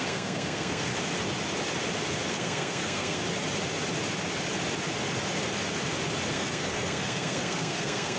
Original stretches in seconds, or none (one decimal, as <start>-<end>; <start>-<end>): 0.9-2.3; 3.2-6.3